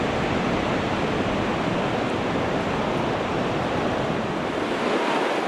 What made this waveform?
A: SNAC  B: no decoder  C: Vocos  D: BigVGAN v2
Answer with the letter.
B